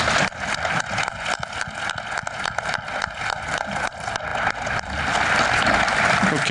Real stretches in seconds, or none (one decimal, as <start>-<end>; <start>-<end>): 0.0-6.5